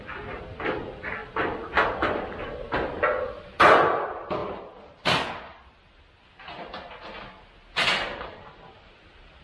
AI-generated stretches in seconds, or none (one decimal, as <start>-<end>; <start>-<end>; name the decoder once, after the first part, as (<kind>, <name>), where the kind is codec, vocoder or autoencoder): none